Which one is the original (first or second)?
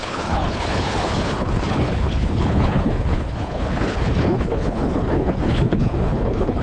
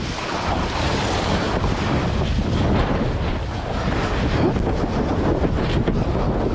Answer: second